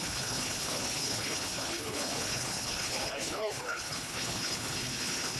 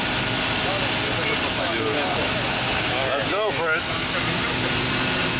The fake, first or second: first